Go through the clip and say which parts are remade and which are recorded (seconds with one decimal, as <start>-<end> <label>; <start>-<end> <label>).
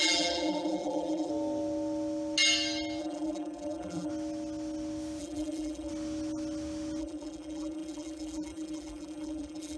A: 0.0-1.3 remade; 1.3-3.0 recorded; 3.0-4.1 remade; 4.1-5.2 recorded; 5.2-5.9 remade; 5.9-7.0 recorded; 7.0-9.8 remade